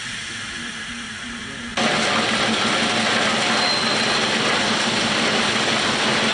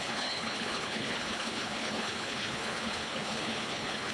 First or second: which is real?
first